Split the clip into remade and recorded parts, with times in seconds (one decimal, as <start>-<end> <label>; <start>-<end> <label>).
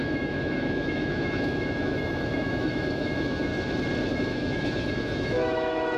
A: 0.0-3.5 remade; 3.5-4.1 recorded; 4.1-6.0 remade